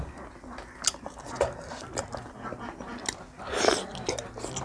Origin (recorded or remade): recorded